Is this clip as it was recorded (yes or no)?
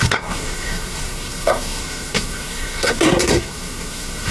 no